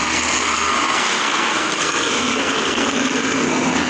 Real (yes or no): no